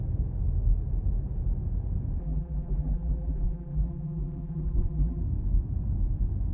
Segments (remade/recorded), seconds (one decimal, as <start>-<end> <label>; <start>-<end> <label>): 0.0-2.2 recorded; 2.2-5.2 remade; 5.2-6.5 recorded